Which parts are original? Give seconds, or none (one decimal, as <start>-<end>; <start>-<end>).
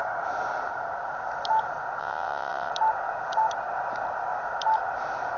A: 0.0-2.0; 2.7-5.4